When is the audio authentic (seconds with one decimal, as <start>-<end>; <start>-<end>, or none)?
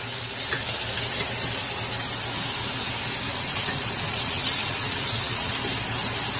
0.0-3.3; 5.5-6.4